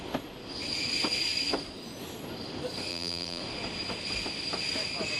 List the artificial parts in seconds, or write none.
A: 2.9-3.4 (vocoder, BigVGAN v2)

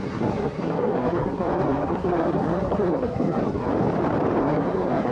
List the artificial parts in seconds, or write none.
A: 0.0-3.7 (codec, SNAC); 4.4-5.1